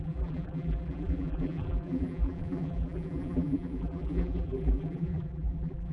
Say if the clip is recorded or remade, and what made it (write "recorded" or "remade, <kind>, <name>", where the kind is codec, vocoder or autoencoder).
remade, vocoder, BigVGAN v2